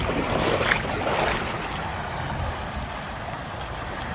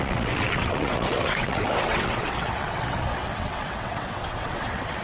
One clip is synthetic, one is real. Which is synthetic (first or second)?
second